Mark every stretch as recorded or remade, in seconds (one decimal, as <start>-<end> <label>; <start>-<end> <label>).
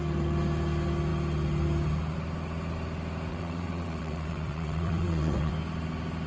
0.0-3.3 recorded; 3.3-5.5 remade; 5.5-6.3 recorded